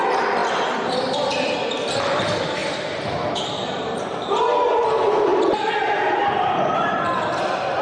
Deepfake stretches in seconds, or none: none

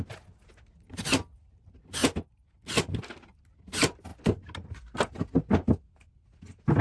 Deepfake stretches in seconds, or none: none

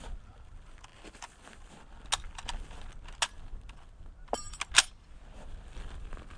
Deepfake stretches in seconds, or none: none

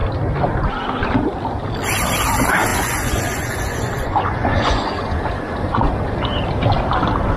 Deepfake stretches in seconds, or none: 2.7-5.9 (vocoder, Vocos)

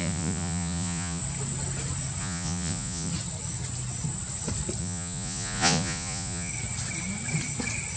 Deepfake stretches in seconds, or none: 0.0-1.2 (vocoder, Vocos); 2.2-3.1; 4.8-6.5

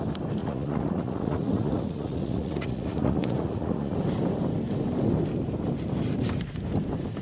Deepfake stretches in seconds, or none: 0.4-4.0 (vocoder, Vocos)

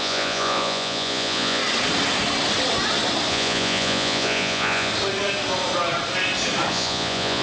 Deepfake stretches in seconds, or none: 0.0-1.6 (vocoder, Vocos); 3.3-4.9; 6.7-7.4